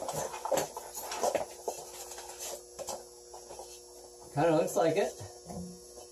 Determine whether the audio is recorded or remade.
recorded